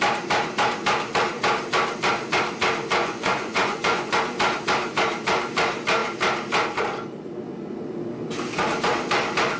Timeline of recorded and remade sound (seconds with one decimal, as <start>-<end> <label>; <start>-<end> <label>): 0.0-3.0 recorded; 3.0-4.2 remade; 4.2-9.6 recorded